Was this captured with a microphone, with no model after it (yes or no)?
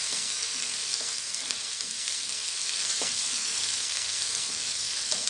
no